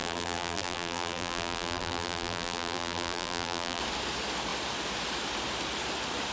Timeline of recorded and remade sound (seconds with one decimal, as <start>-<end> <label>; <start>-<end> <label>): 0.0-3.8 remade; 3.8-6.3 recorded

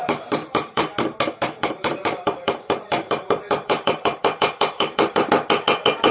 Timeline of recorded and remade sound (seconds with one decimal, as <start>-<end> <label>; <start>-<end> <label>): 0.0-0.9 remade; 0.9-1.6 recorded; 1.6-5.3 remade; 5.3-6.1 recorded

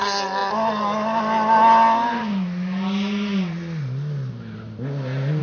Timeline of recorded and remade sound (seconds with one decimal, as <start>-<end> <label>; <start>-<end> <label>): 0.0-5.4 recorded

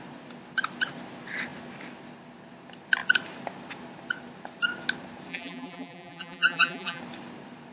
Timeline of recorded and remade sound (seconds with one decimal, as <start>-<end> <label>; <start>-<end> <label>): 0.0-5.3 recorded; 5.3-7.0 remade; 7.0-7.7 recorded